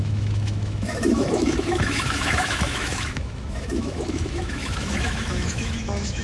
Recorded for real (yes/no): no